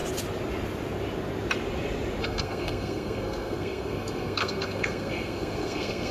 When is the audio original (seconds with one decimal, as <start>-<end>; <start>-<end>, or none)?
0.0-2.2